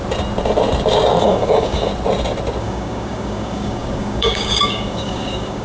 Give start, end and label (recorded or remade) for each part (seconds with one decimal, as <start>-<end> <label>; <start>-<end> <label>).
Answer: 0.0-1.2 recorded; 1.2-1.9 remade; 1.9-2.6 recorded; 2.6-5.6 remade